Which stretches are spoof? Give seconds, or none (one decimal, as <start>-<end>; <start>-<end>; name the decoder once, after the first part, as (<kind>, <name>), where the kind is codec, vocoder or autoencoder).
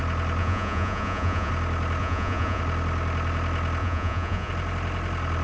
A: 0.4-1.5 (vocoder, Vocos); 2.0-2.6; 3.8-4.5